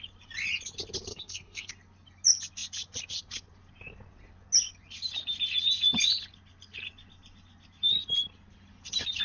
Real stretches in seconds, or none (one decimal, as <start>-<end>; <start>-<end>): 0.0-1.1; 1.7-9.2